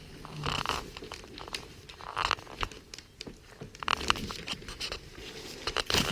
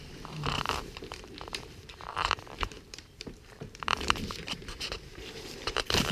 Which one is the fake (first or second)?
second